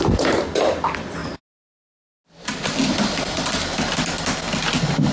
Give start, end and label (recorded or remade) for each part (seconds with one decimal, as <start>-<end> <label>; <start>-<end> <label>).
0.0-5.1 recorded